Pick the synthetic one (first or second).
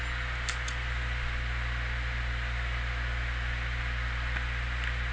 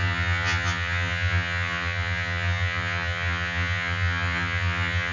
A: second